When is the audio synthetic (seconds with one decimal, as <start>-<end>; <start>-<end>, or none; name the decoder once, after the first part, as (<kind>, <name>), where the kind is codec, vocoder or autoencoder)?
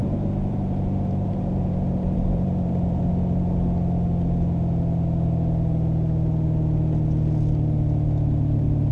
0.0-3.1 (vocoder, BigVGAN v2)